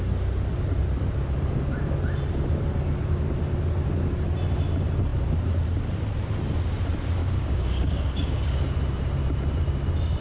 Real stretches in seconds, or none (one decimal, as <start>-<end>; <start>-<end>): 0.0-7.2; 8.6-10.2